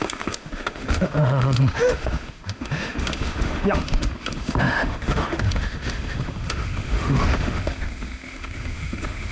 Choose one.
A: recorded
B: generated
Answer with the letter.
B